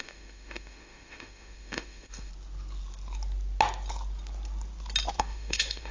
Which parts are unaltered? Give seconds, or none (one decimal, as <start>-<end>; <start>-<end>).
2.3-5.2